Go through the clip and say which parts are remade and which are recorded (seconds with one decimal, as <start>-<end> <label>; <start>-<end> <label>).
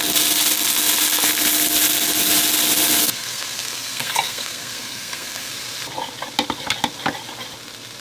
0.0-3.0 recorded; 3.0-5.5 remade; 5.5-8.0 recorded